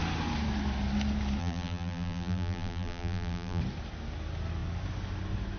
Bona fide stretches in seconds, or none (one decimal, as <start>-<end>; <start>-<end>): 0.0-1.4; 3.6-5.6